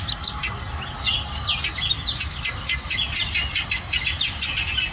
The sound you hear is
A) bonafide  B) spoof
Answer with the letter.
A